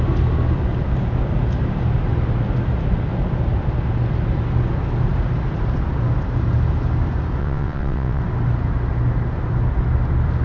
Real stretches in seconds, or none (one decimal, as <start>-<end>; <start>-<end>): 0.0-7.4; 8.2-10.4